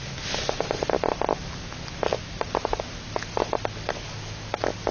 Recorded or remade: recorded